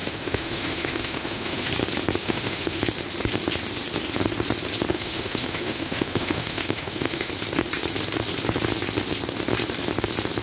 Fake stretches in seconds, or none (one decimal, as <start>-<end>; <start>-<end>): 0.0-1.7; 2.2-2.8; 4.9-7.3